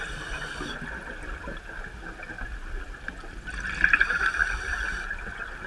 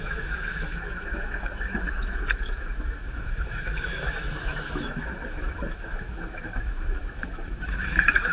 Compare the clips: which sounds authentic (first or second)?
first